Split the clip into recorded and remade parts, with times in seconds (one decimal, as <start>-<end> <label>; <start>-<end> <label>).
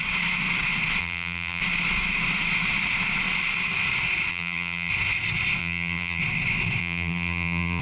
0.0-1.0 recorded; 1.0-1.6 remade; 1.6-4.3 recorded; 4.3-4.9 remade; 4.9-5.6 recorded; 5.6-6.2 remade; 6.2-6.8 recorded; 6.8-7.8 remade